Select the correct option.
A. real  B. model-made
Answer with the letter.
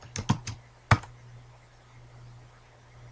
A